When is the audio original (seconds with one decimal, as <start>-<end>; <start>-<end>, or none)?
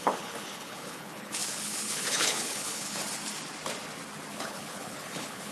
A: 3.0-4.3